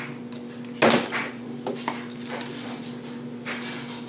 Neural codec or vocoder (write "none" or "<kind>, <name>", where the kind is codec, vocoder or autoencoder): none